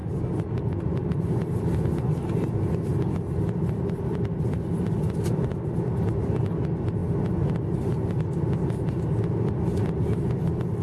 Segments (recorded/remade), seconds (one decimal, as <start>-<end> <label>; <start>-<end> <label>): 0.0-1.0 recorded; 1.0-1.6 remade; 1.6-10.8 recorded